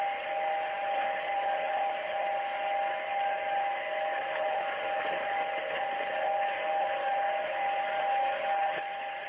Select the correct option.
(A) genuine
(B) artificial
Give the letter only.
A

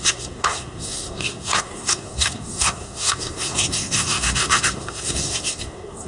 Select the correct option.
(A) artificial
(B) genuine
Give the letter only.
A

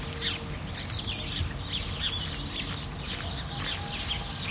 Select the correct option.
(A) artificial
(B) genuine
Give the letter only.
B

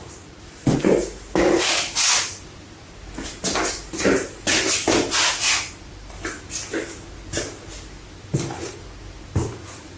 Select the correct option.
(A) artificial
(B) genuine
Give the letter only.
B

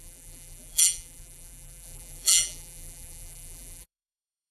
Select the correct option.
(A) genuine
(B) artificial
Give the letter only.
B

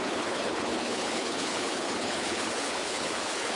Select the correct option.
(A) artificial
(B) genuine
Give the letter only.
A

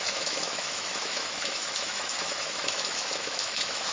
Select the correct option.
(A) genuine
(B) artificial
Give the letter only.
B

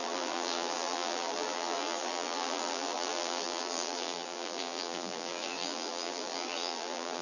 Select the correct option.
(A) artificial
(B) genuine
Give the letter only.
A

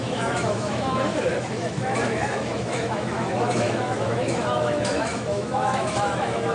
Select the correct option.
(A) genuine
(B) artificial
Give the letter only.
B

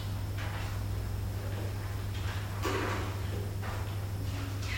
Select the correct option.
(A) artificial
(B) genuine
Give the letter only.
B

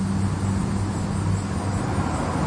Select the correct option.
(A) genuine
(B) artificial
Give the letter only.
A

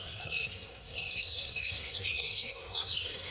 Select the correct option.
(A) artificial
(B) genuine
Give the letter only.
A